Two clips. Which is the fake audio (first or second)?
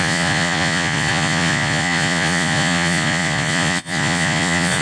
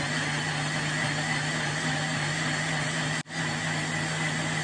first